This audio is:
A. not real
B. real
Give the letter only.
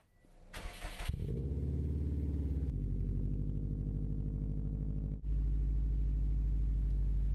B